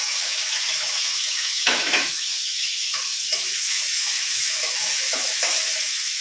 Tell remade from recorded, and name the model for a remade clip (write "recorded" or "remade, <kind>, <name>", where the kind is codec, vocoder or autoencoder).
remade, autoencoder, DAC-VAE